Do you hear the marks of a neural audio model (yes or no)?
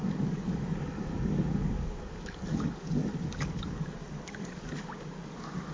yes